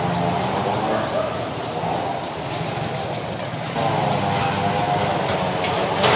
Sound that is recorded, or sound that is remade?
recorded